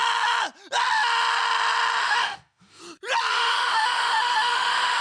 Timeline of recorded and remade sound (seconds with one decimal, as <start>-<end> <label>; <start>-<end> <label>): 0.0-2.0 recorded; 2.0-2.8 remade; 2.8-3.3 recorded; 3.3-5.0 remade